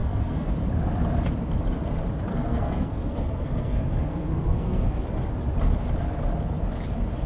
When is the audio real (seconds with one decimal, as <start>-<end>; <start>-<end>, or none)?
0.5-2.3; 5.0-7.3